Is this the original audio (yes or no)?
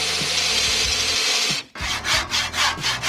yes